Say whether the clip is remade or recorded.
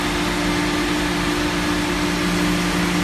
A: recorded